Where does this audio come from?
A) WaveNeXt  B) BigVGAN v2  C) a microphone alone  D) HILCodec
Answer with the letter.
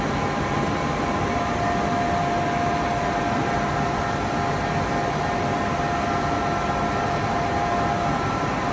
C